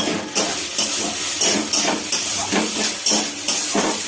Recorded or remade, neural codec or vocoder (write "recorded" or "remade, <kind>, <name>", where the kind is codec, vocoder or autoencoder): recorded